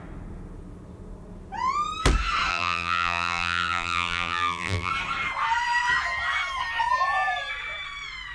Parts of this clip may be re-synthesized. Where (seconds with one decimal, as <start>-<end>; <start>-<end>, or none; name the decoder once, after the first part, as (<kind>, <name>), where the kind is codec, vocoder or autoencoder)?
2.5-4.9 (vocoder, BigVGAN v2)

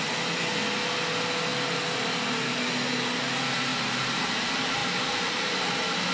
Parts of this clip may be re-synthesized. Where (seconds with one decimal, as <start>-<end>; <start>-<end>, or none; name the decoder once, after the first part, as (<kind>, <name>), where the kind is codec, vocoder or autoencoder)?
3.7-4.2 (vocoder, BigVGAN v2); 4.8-5.6

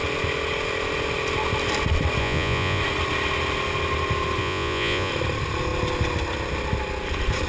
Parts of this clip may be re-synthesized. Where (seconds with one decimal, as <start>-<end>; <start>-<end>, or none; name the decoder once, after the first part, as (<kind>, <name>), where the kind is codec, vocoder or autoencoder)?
2.2-2.8 (vocoder, Vocos); 4.4-5.1

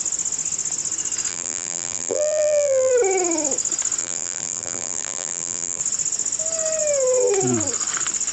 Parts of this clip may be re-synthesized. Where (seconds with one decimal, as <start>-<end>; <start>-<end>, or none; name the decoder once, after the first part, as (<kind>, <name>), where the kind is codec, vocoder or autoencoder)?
1.3-2.9 (vocoder, BigVGAN v2); 4.0-5.8

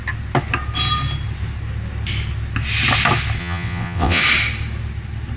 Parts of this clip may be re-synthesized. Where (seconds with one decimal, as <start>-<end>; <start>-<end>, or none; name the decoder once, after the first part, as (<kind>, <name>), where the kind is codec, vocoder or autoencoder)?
3.4-4.2 (vocoder, WaveNeXt)

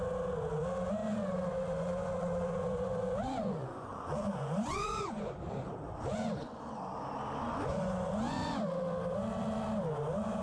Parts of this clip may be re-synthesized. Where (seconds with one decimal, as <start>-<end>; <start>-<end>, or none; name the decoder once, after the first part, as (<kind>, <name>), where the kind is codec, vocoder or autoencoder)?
1.0-5.4 (vocoder, Vocos); 6.1-6.6; 7.7-8.6

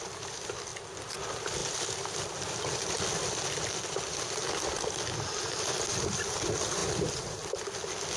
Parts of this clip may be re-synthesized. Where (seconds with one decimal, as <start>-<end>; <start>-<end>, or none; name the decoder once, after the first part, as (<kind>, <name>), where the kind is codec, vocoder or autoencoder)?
none